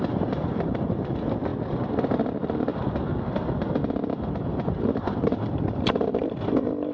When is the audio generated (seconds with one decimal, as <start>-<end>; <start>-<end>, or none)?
0.0-1.5; 4.3-6.9